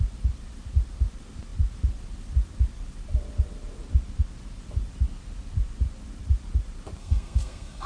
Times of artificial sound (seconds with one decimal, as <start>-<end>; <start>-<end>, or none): 7.0-7.9